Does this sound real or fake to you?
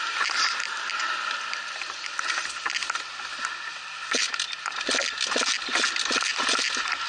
real